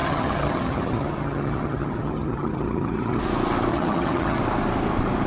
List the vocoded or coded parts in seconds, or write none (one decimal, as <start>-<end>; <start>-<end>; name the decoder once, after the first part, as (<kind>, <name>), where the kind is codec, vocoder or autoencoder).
0.0-3.2 (vocoder, HiFi-GAN); 3.7-4.4